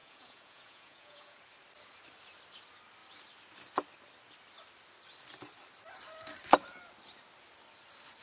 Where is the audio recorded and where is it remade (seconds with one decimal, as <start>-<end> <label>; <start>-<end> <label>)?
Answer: 0.0-1.4 remade; 1.4-8.2 recorded